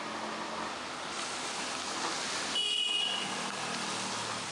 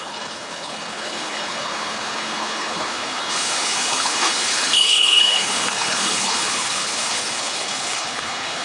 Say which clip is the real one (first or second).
first